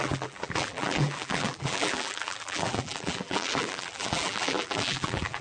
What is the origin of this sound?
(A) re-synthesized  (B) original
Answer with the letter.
A